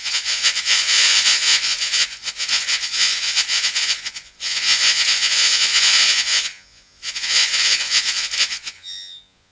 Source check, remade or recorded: remade